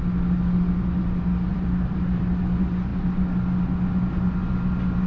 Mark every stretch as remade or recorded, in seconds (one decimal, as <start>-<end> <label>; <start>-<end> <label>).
0.0-1.5 recorded; 1.5-2.2 remade; 2.2-5.1 recorded